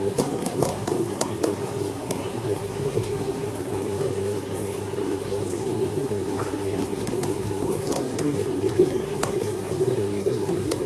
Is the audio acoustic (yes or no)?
no